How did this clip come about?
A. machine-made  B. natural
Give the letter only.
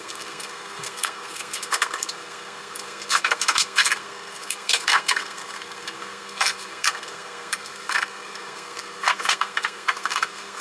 A